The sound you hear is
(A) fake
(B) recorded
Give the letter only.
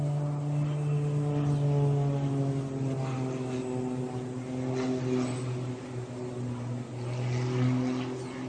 B